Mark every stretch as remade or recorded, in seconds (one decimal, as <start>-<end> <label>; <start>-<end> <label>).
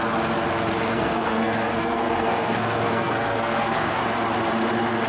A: 0.0-0.9 recorded; 0.9-4.0 remade; 4.0-5.1 recorded